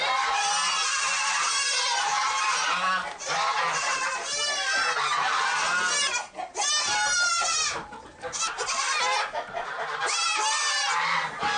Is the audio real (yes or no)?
yes